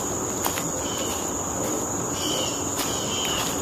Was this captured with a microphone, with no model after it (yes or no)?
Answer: yes